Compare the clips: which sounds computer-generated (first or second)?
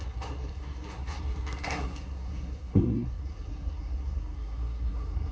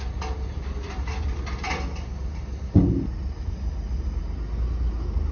first